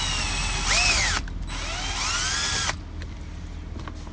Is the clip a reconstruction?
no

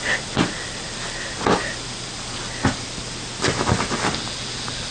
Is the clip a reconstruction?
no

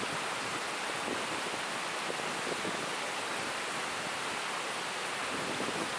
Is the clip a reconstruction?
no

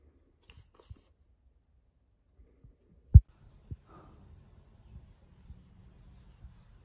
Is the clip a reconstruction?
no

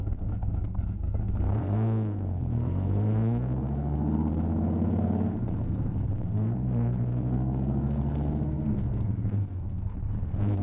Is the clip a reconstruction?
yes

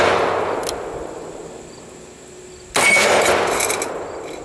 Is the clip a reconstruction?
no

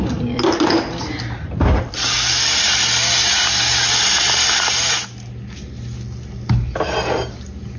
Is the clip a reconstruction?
no